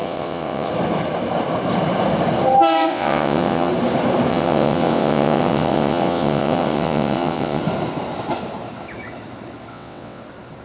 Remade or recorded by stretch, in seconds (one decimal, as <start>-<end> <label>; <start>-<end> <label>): 0.0-0.7 remade; 0.7-2.9 recorded; 2.9-3.7 remade; 3.7-4.3 recorded; 4.3-7.6 remade; 7.6-9.7 recorded; 9.7-10.2 remade; 10.2-10.6 recorded